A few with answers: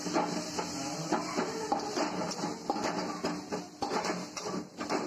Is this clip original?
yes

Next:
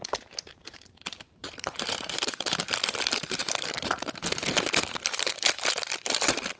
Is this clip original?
no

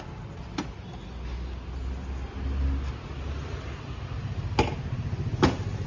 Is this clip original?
yes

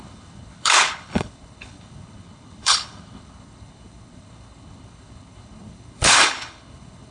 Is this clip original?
no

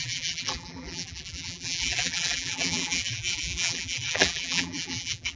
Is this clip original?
no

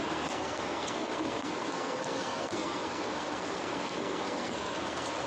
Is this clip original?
no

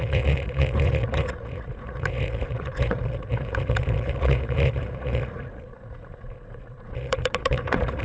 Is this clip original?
no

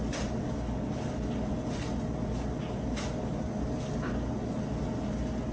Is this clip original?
yes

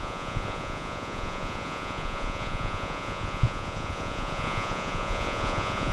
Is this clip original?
no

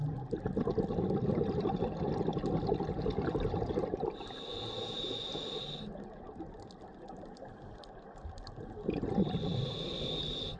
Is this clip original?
yes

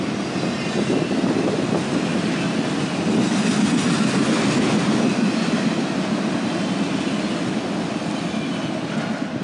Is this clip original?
yes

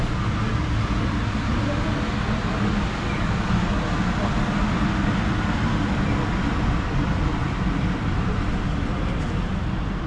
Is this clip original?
yes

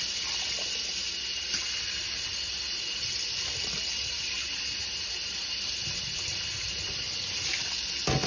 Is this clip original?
yes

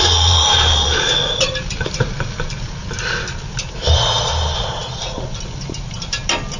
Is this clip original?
yes